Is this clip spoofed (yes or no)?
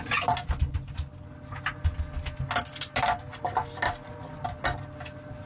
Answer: no